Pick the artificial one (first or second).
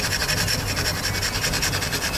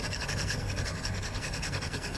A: second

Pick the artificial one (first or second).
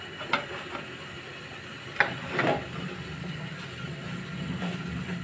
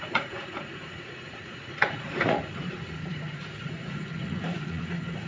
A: second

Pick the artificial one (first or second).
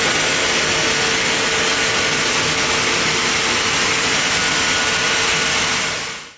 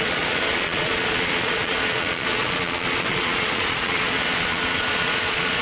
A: second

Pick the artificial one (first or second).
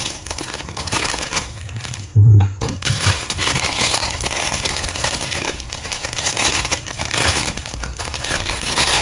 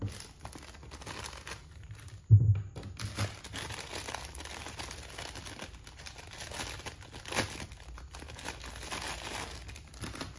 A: first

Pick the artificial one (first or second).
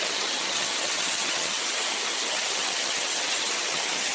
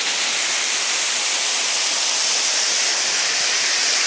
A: first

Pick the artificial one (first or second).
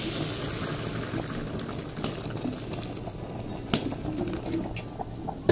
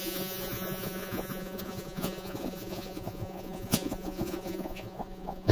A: second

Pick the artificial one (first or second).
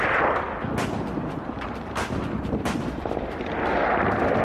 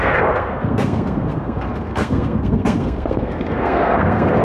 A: second